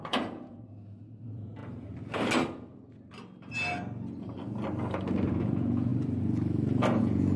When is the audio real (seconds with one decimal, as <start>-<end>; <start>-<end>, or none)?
1.6-5.4; 5.9-7.0